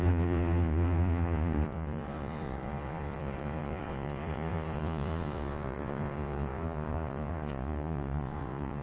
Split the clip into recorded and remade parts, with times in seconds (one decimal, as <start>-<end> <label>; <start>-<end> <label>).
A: 0.0-8.8 remade